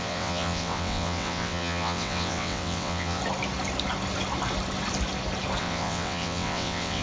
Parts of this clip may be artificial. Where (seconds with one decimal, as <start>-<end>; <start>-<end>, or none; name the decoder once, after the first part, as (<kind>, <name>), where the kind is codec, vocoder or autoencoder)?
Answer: 0.0-3.2 (vocoder, WaveNeXt); 5.6-7.0